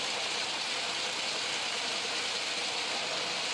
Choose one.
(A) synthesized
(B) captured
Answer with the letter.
B